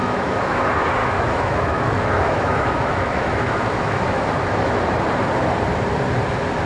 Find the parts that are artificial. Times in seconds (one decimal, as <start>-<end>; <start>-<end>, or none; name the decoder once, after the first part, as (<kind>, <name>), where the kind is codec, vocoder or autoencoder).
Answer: 0.0-0.6 (autoencoder, DAC-VAE); 1.0-4.7